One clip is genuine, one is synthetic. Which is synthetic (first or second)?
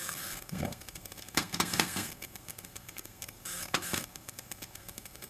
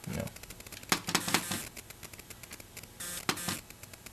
first